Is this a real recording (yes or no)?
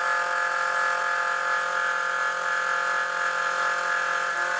yes